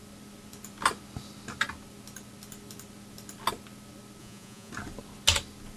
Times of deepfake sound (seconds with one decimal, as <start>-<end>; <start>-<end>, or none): 4.2-4.7

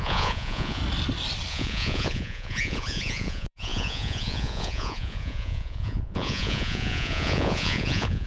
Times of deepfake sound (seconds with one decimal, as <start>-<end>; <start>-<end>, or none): 0.0-0.8; 1.5-8.3